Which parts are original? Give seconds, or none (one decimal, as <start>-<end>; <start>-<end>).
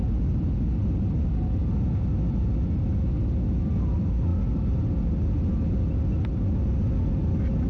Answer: 0.0-7.7